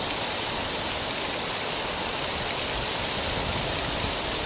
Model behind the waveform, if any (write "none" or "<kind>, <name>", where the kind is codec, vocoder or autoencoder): none